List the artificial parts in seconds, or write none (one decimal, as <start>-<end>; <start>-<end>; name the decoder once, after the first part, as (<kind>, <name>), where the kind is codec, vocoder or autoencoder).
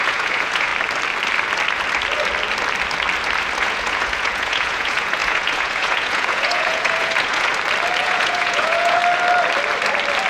0.0-0.7 (vocoder, Vocos); 3.6-7.5; 8.0-9.0